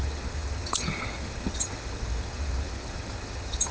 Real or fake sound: fake